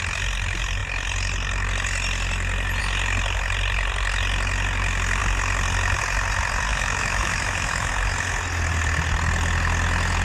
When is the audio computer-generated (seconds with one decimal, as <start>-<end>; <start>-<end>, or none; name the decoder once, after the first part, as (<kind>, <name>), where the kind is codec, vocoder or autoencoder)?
6.7-7.9 (autoencoder, DAC-VAE)